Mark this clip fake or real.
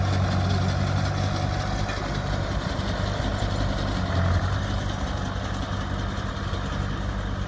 real